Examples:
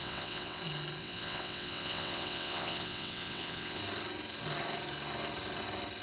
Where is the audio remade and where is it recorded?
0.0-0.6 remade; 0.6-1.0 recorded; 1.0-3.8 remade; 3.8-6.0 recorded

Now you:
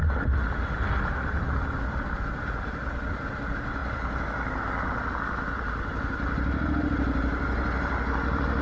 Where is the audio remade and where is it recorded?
0.0-8.6 recorded

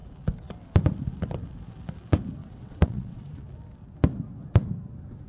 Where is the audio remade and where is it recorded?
0.0-2.4 recorded; 2.4-3.4 remade; 3.4-5.3 recorded

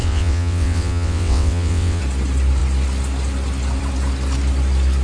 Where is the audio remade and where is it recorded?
0.0-2.0 remade; 2.0-5.0 recorded

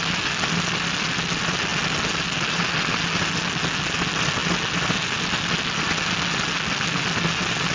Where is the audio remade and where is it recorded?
0.0-7.7 recorded

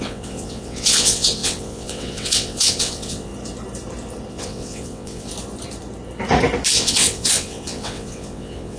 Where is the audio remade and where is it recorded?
0.0-3.3 remade; 3.3-4.3 recorded; 4.3-5.3 remade; 5.3-6.7 recorded; 6.7-8.8 remade

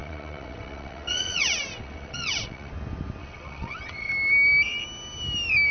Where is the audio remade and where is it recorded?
0.0-2.7 remade; 2.7-3.2 recorded; 3.2-4.1 remade; 4.1-5.7 recorded